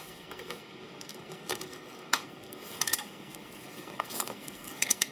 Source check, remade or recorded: remade